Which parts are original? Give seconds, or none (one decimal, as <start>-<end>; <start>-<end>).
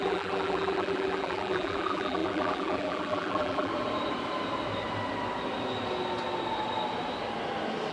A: 3.7-7.9